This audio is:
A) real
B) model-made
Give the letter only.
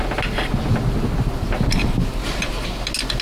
A